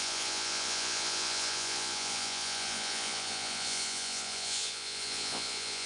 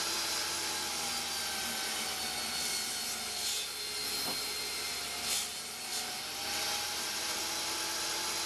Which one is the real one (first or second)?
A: second